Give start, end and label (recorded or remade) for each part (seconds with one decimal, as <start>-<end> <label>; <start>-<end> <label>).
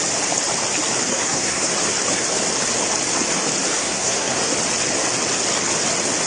0.0-1.1 recorded; 1.1-1.7 remade; 1.7-3.8 recorded; 3.8-4.4 remade; 4.4-6.3 recorded